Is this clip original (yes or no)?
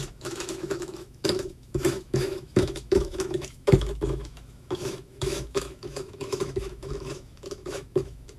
no